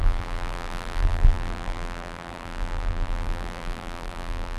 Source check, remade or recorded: remade